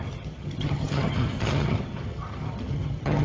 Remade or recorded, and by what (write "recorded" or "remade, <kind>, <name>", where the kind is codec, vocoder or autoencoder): remade, vocoder, HiFi-GAN